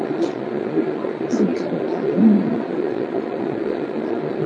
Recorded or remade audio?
remade